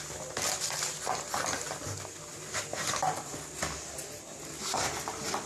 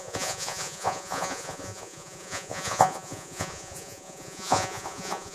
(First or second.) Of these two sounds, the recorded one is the first